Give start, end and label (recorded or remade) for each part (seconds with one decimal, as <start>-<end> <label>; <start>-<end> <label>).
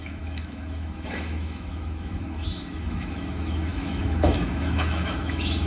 0.0-5.7 remade